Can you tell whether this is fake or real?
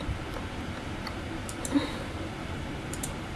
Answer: fake